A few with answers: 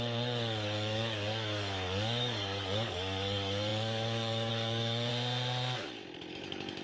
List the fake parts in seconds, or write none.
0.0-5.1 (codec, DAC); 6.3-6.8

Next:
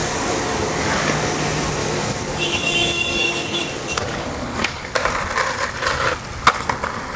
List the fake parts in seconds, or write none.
0.0-1.4 (codec, DAC); 1.8-5.2

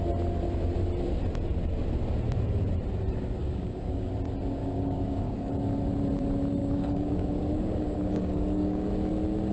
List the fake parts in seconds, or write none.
3.4-4.1 (codec, DAC); 4.6-5.5; 6.6-8.9